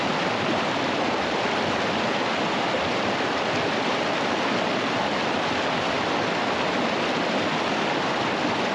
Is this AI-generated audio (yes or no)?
no